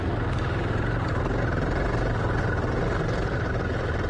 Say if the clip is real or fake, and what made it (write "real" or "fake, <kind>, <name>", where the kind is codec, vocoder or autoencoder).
real